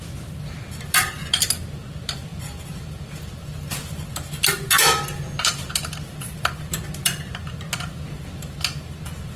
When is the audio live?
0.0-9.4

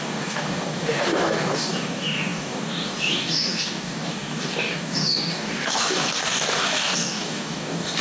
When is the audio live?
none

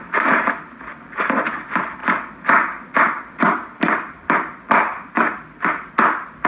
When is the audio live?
0.0-6.5

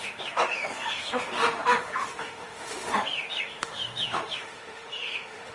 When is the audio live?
none

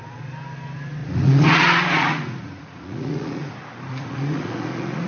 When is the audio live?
0.0-1.0; 3.5-3.9

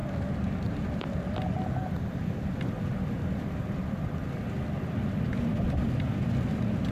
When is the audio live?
0.0-6.9